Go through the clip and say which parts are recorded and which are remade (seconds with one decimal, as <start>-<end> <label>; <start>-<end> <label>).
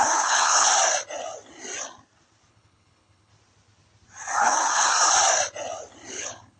0.0-0.7 remade; 0.7-2.5 recorded; 2.5-3.3 remade; 3.3-4.4 recorded; 4.4-4.9 remade; 4.9-6.1 recorded; 6.1-6.6 remade